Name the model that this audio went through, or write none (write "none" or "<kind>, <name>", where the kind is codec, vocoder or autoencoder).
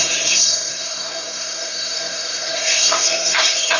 codec, SNAC